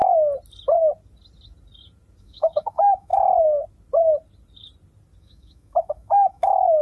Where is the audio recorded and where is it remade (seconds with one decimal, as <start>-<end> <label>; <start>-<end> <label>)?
0.0-2.2 recorded; 2.2-3.1 remade; 3.1-5.2 recorded; 5.2-6.8 remade